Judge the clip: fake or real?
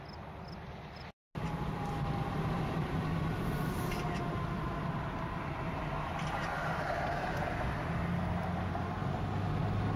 real